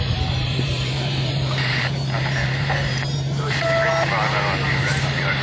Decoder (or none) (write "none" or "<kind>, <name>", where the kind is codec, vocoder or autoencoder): vocoder, BigVGAN v2